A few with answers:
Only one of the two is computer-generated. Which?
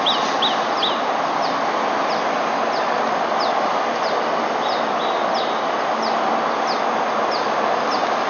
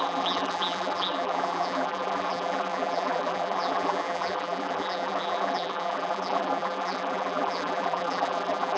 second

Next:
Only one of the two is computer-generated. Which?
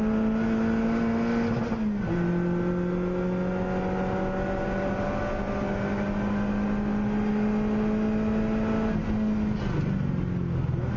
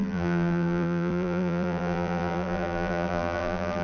second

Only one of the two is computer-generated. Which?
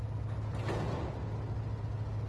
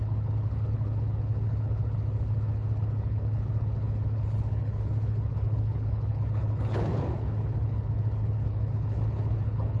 second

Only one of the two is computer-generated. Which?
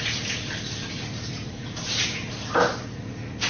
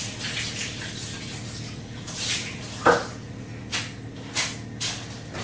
first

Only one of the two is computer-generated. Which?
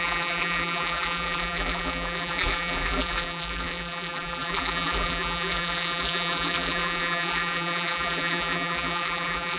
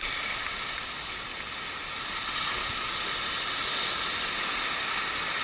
first